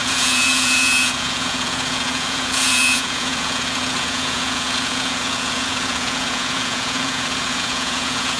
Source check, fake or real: fake